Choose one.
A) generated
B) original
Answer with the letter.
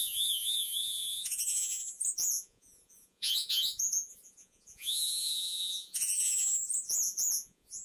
A